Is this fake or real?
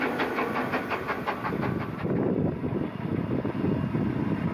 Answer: real